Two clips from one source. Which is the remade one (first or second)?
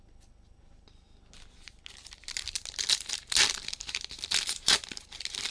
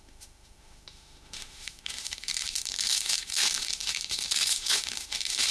second